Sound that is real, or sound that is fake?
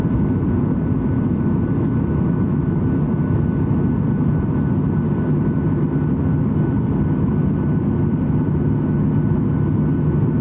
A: real